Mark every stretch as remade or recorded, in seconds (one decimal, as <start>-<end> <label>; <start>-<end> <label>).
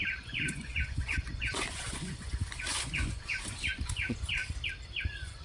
0.0-4.4 remade; 4.4-5.0 recorded; 5.0-5.4 remade